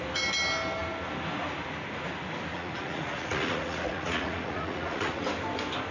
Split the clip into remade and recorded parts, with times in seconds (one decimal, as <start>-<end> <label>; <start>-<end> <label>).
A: 0.0-2.5 recorded; 2.5-5.2 remade; 5.2-5.9 recorded